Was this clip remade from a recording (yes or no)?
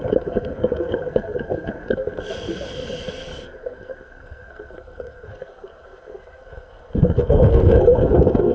yes